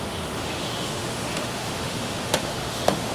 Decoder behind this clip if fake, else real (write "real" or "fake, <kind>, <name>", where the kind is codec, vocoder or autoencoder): fake, autoencoder, DAC-VAE